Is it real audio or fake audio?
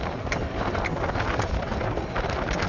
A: real